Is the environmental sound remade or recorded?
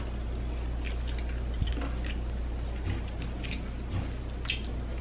recorded